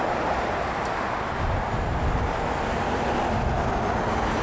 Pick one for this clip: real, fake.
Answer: real